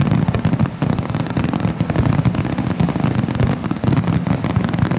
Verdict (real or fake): real